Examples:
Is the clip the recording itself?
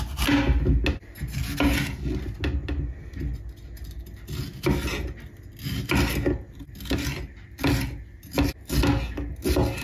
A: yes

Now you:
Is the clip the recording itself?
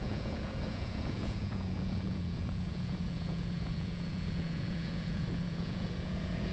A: no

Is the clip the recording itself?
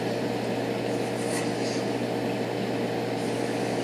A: yes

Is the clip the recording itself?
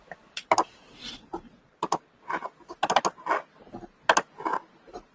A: yes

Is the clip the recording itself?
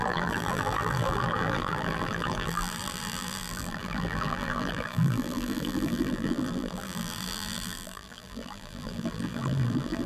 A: no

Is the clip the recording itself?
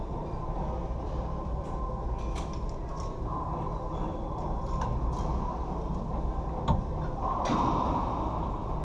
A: yes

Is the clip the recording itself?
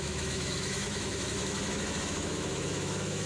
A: no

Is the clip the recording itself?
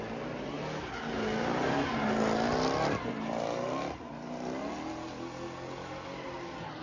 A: yes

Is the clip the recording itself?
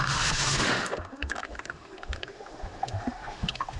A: no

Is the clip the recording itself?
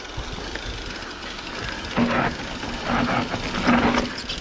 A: yes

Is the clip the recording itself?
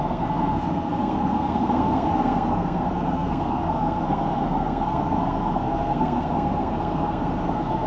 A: no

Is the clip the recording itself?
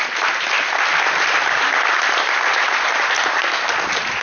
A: yes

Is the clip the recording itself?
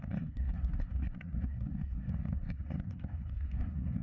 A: no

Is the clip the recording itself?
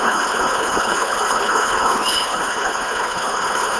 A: no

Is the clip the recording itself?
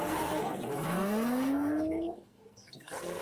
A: no